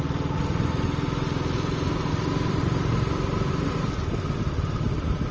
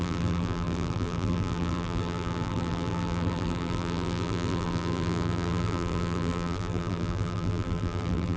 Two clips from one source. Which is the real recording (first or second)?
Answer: first